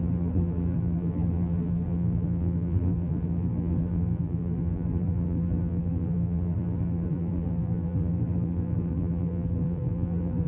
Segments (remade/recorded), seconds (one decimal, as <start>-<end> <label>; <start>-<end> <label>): 0.0-10.5 remade